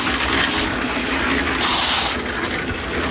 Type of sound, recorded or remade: recorded